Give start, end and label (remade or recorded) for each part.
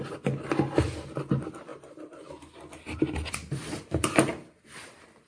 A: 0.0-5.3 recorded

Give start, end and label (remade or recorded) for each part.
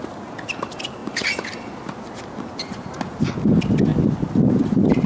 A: 0.0-5.1 recorded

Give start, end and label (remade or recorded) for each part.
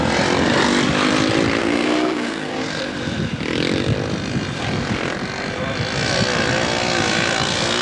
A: 0.0-1.6 recorded; 1.6-2.8 remade; 2.8-7.8 recorded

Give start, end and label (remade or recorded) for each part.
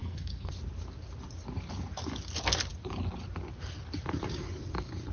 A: 0.0-0.5 remade; 0.5-5.1 recorded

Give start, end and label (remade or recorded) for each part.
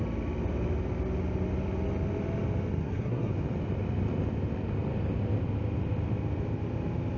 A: 0.0-2.8 recorded; 2.8-3.3 remade; 3.3-7.2 recorded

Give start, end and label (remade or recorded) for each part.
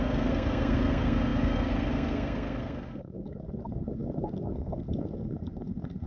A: 0.0-6.1 remade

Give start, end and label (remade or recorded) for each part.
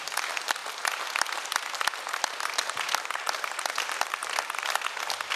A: 0.0-5.4 recorded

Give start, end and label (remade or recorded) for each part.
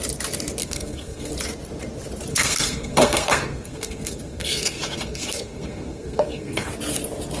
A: 0.0-0.6 recorded; 0.6-1.3 remade; 1.3-2.3 recorded; 2.3-6.7 remade; 6.7-7.4 recorded